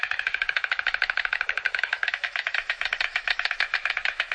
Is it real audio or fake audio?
fake